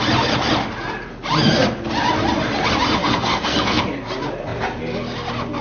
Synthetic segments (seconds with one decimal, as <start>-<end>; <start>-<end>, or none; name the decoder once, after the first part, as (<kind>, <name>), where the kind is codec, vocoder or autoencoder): 3.0-3.8 (codec, SNAC)